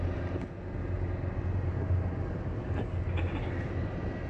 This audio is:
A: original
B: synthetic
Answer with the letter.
A